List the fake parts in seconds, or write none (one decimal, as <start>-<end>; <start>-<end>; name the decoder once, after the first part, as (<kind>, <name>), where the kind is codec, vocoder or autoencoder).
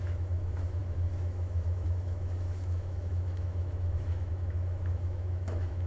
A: 0.0-5.9 (autoencoder, DAC-VAE)